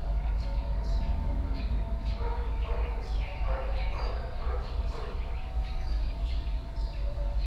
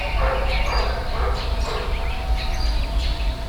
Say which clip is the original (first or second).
second